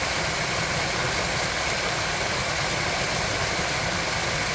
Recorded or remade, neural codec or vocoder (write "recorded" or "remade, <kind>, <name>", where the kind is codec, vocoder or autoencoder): recorded